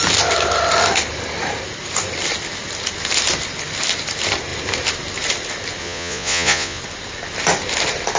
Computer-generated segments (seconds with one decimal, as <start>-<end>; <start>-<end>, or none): 5.8-6.8